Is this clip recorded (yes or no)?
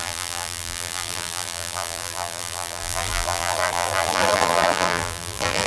no